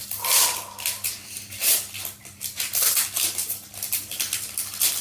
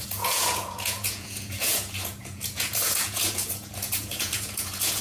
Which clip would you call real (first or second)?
first